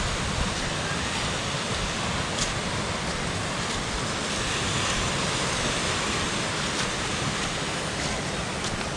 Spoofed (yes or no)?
no